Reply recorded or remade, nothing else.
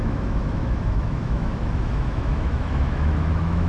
remade